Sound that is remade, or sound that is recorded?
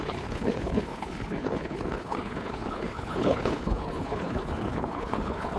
remade